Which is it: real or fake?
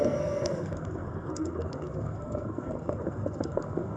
fake